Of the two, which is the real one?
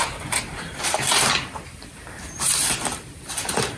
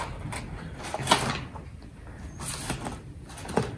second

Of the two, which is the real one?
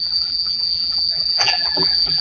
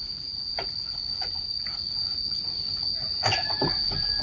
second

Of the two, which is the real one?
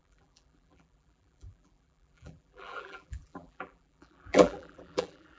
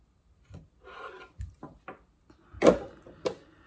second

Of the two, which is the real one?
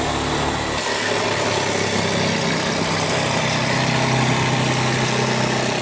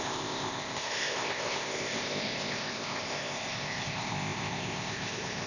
first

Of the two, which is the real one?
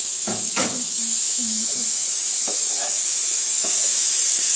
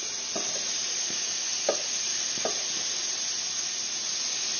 second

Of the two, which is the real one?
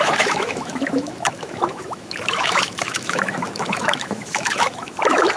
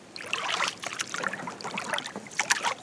second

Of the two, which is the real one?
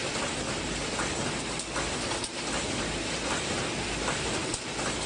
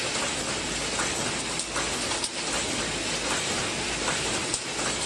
second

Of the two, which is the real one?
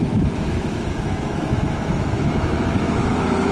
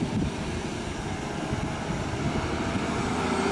second